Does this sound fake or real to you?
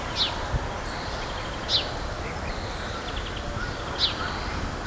real